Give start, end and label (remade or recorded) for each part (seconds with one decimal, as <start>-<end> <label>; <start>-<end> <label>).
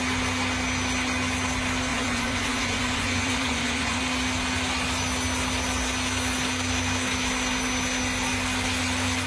0.0-1.9 recorded; 1.9-4.0 remade; 4.0-9.3 recorded